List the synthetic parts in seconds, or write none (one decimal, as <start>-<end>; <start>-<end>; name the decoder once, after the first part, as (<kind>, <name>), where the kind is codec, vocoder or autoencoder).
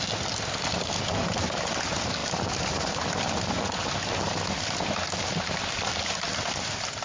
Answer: 2.2-3.4 (vocoder, BigVGAN v2)